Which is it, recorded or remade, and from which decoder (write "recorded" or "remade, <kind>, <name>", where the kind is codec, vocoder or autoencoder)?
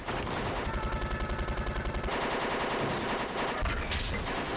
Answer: recorded